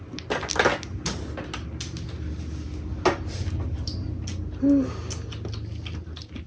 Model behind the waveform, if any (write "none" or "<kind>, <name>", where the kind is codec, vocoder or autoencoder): none